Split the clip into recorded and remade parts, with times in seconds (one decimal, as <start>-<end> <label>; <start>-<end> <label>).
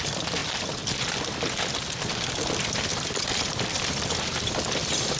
0.0-0.4 remade; 0.4-2.1 recorded; 2.1-5.2 remade